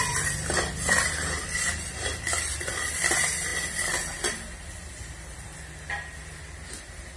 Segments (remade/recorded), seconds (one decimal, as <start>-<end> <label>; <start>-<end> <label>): 0.0-7.2 recorded